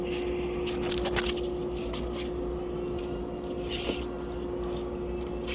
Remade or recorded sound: recorded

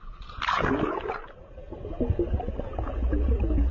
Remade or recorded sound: recorded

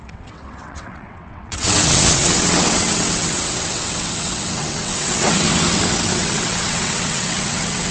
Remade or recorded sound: remade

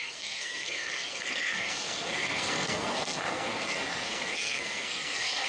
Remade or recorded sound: remade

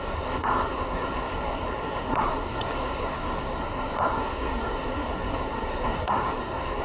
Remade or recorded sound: remade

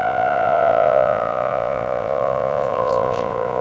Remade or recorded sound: remade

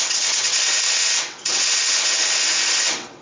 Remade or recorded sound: remade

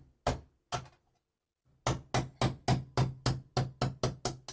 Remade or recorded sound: recorded